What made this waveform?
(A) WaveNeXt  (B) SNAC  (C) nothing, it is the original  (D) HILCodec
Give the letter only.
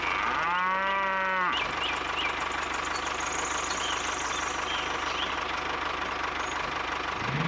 C